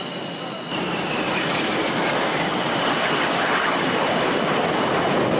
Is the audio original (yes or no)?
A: yes